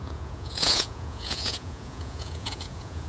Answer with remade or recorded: remade